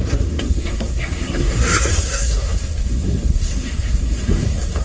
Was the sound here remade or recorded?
remade